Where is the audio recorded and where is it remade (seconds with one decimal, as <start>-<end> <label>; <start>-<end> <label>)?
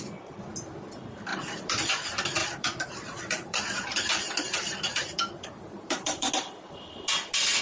0.0-1.3 recorded; 1.3-1.9 remade; 1.9-2.4 recorded; 2.4-6.3 remade; 6.3-7.6 recorded